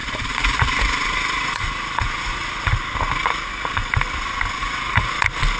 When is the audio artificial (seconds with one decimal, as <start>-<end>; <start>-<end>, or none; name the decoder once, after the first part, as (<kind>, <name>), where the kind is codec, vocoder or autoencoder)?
0.0-2.7 (vocoder, Vocos); 4.6-5.1